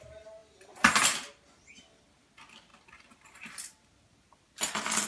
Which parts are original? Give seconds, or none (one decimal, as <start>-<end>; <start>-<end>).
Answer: 0.0-5.1